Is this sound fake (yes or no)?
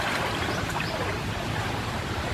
no